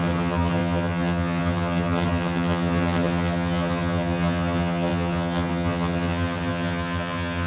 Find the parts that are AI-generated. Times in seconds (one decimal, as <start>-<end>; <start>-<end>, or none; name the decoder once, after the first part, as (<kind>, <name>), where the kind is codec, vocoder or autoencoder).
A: 0.0-7.5 (vocoder, HiFi-GAN)

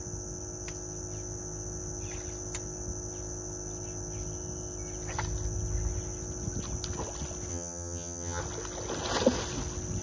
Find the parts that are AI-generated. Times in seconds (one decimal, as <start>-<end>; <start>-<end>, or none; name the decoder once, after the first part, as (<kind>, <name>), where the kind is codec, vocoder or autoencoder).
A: 7.5-8.4 (vocoder, HiFi-GAN)

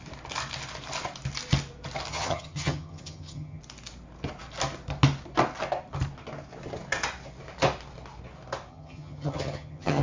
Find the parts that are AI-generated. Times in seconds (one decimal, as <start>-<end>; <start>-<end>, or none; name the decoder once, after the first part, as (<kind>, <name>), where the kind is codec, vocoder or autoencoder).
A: 2.1-3.6 (vocoder, HiFi-GAN); 8.7-10.0

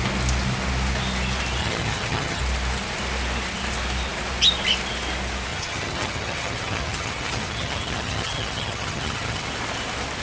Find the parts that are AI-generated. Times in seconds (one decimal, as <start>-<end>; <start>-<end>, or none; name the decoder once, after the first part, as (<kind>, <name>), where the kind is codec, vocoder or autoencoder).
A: 1.6-2.4 (vocoder, HiFi-GAN); 5.5-9.5

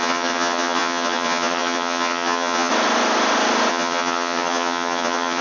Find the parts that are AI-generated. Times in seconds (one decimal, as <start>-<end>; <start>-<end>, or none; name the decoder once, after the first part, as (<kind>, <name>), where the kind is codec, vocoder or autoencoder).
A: 0.0-2.7 (vocoder, HiFi-GAN); 3.7-5.4

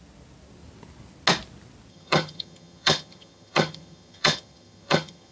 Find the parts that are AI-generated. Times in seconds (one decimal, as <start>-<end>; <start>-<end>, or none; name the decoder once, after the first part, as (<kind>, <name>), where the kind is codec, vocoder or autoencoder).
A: 1.9-5.3 (vocoder, HiFi-GAN)

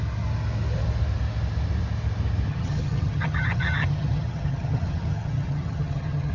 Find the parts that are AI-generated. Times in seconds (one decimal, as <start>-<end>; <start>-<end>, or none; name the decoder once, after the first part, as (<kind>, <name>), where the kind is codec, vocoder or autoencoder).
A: 2.5-6.3 (vocoder, HiFi-GAN)